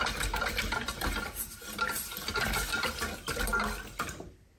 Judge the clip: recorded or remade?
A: recorded